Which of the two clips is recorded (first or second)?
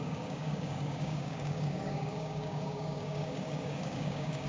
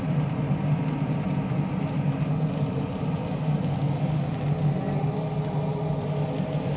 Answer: second